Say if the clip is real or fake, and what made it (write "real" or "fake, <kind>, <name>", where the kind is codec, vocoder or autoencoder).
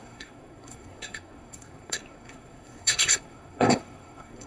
fake, codec, SNAC